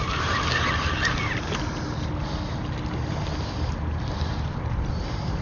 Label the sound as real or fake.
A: real